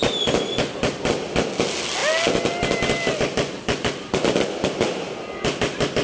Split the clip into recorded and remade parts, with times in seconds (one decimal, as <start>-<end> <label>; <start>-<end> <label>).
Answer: 0.0-6.0 recorded